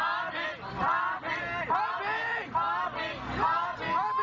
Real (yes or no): yes